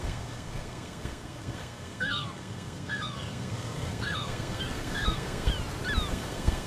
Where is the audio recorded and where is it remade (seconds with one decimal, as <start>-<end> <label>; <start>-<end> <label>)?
0.0-5.5 remade; 5.5-6.1 recorded; 6.1-6.7 remade